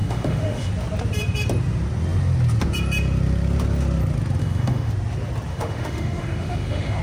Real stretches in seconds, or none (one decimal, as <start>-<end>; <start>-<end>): 0.7-4.4; 4.9-5.5